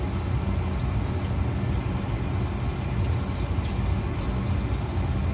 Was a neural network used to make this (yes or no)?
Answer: no